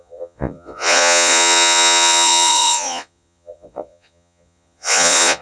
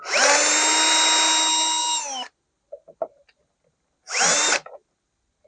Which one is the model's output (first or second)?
first